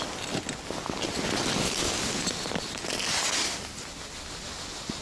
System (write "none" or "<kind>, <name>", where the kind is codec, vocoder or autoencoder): none